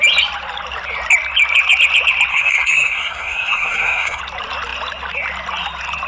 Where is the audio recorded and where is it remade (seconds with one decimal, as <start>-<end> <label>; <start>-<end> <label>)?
0.0-2.3 recorded; 2.3-4.2 remade; 4.2-6.1 recorded